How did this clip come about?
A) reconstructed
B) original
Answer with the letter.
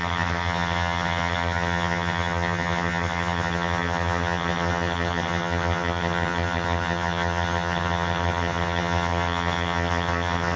A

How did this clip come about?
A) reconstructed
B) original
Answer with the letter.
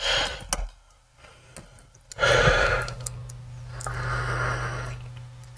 B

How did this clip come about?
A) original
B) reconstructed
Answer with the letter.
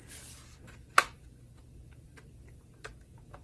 A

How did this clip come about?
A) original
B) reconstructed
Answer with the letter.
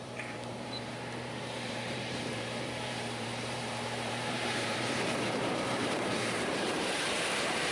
B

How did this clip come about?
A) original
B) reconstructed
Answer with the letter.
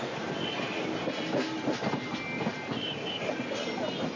A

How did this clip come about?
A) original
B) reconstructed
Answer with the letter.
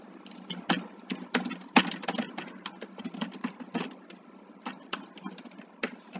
A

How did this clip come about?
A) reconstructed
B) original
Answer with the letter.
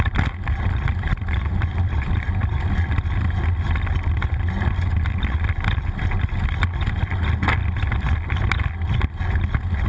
B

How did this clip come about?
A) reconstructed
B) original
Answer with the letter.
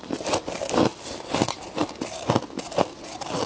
B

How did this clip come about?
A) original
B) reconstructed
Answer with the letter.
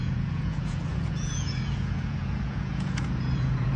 B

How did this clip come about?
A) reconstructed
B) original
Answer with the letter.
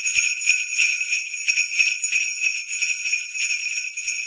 B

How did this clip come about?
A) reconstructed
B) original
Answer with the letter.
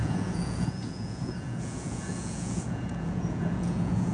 A